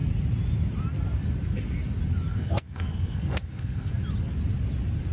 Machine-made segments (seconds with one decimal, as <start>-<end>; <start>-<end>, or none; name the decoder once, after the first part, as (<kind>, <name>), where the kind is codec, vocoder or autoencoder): 2.3-3.9 (codec, SNAC)